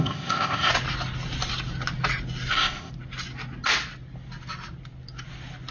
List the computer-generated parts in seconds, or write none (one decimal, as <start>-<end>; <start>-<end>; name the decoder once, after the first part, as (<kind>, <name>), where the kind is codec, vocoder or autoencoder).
0.0-0.7 (codec, ZipCodec); 2.5-2.9

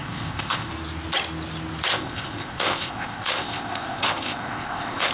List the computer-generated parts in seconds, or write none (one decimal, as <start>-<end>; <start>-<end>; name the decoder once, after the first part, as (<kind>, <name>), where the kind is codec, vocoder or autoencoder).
0.0-0.7 (codec, ZipCodec); 1.9-5.1

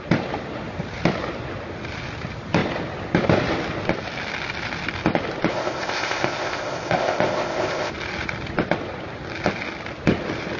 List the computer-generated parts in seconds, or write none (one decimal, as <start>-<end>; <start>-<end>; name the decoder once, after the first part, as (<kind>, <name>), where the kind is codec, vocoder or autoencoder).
5.5-7.9 (codec, ZipCodec)

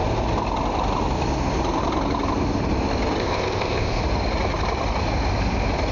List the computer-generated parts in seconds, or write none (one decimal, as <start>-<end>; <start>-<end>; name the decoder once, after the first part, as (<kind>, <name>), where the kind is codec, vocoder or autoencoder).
3.2-4.0 (codec, ZipCodec)

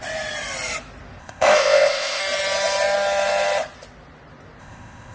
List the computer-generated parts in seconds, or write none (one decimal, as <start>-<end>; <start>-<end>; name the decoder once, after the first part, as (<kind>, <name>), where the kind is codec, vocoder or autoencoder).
1.2-2.2 (codec, ZipCodec); 4.6-5.1